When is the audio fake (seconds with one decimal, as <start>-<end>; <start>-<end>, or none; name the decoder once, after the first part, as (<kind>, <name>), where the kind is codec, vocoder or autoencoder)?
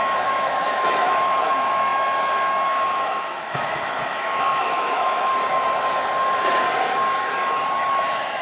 0.0-5.3 (autoencoder, DAC-VAE)